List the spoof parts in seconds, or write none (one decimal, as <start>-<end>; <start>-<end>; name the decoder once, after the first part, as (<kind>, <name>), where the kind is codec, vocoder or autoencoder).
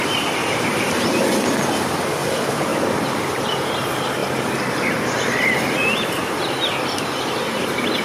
0.4-1.2 (vocoder, BigVGAN v2); 2.7-3.4